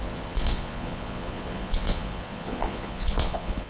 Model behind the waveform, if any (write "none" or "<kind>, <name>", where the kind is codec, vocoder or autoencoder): vocoder, Vocos